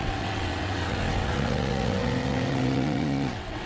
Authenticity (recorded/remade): remade